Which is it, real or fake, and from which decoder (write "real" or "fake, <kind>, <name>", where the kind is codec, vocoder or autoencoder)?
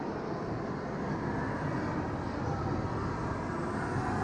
real